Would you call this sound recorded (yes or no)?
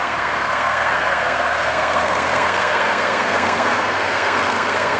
no